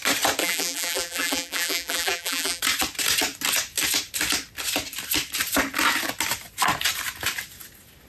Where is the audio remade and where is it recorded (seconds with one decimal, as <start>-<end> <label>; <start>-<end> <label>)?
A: 0.0-0.4 recorded; 0.4-2.6 remade; 2.6-8.1 recorded